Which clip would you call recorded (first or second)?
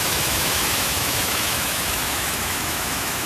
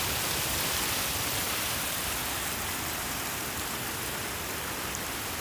second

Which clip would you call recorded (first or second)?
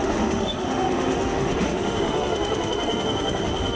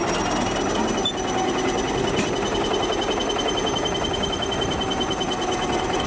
second